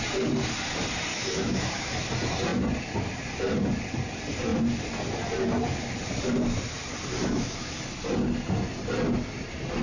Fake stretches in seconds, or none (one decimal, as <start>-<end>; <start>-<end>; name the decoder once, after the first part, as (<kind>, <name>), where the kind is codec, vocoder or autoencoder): 1.1-1.9 (autoencoder, DAC-VAE); 7.2-7.8